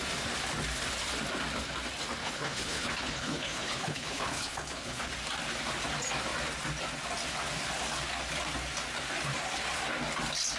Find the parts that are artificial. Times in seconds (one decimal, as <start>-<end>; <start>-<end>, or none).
2.2-5.1

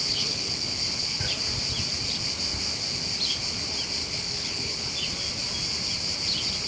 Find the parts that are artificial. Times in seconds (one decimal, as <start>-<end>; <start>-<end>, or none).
0.0-1.2; 4.0-4.9

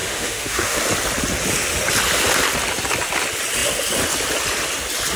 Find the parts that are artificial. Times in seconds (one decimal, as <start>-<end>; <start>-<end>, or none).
0.0-0.8

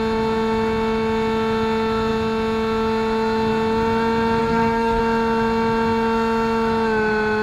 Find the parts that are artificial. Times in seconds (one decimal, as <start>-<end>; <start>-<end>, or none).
4.4-5.0

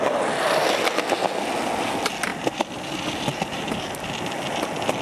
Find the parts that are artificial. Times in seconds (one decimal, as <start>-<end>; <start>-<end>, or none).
2.3-4.0

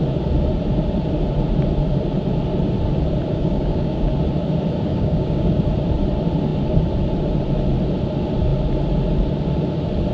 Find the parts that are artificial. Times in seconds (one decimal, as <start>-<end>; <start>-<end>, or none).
3.3-4.1; 4.9-5.6

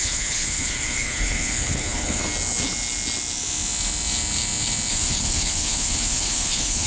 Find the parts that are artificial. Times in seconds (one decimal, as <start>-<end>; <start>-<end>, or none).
0.0-2.2; 4.9-6.9

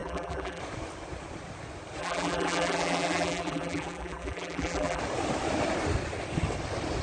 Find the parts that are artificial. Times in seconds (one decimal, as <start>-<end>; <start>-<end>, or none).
0.0-0.6; 2.0-5.0